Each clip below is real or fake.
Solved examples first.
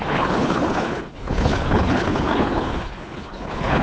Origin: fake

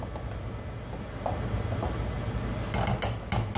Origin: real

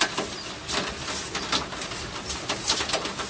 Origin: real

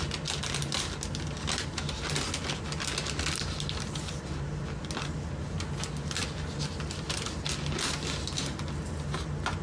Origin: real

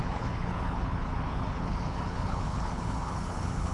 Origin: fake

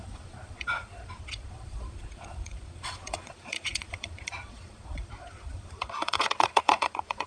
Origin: fake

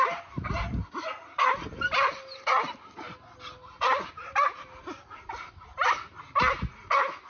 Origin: real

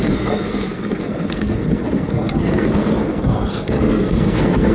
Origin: fake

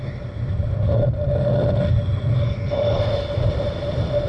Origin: real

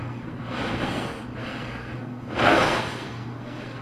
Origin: fake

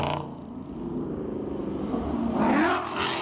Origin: real